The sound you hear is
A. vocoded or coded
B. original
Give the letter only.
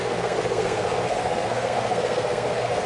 A